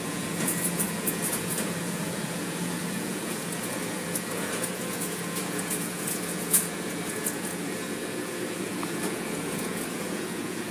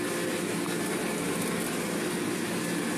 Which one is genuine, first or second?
second